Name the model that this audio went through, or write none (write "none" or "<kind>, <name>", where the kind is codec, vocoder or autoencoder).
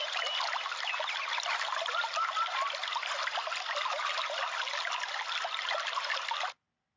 none